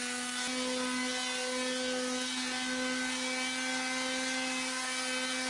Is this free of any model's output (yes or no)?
yes